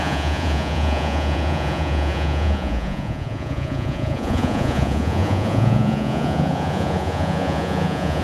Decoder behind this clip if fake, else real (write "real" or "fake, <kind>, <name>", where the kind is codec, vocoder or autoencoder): fake, vocoder, Vocos